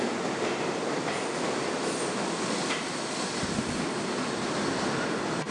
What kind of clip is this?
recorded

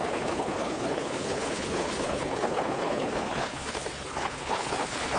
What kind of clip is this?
remade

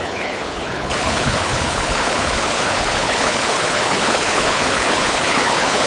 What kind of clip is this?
remade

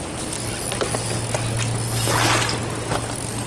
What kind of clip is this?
recorded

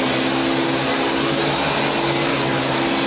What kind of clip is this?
recorded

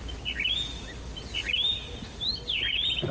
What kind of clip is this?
recorded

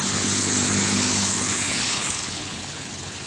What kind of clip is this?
remade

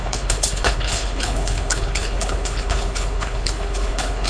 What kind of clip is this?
remade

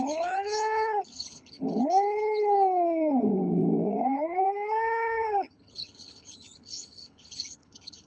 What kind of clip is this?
remade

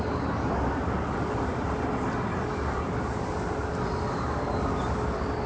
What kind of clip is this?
recorded